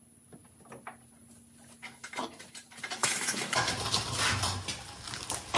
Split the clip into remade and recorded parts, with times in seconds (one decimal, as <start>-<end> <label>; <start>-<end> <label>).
0.0-3.0 recorded; 3.0-3.7 remade; 3.7-5.6 recorded